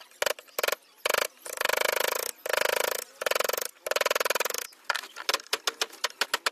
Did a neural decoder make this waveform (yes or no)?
no